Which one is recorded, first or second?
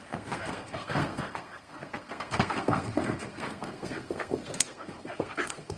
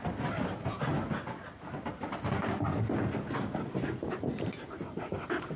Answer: second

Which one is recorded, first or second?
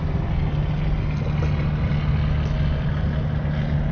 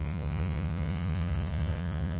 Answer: first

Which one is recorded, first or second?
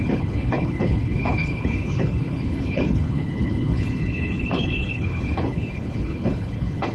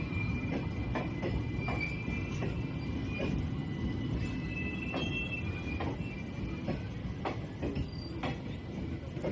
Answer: second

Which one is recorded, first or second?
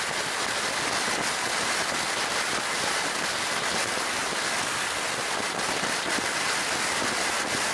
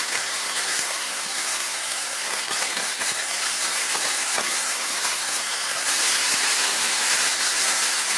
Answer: first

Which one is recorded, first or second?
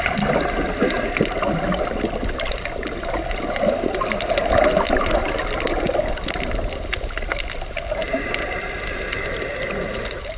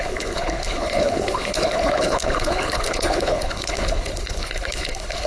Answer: first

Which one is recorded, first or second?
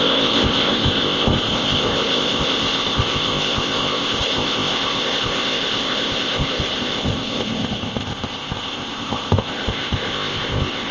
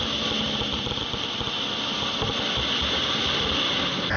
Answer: second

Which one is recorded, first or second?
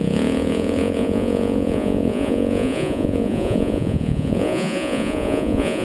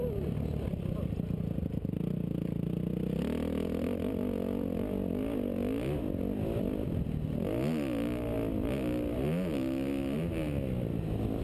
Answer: second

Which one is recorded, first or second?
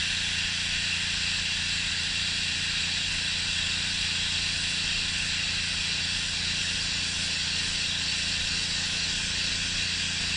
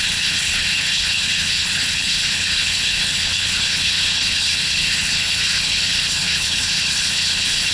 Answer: first